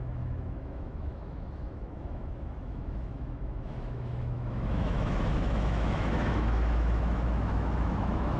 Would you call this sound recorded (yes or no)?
no